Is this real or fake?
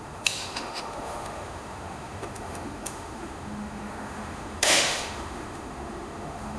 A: fake